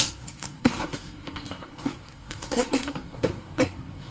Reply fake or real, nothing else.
fake